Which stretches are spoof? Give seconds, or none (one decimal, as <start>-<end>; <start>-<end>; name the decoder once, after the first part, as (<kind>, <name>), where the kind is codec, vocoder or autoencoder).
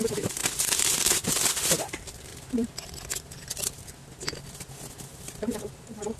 0.0-0.4 (vocoder, BigVGAN v2); 1.0-2.3; 5.7-6.2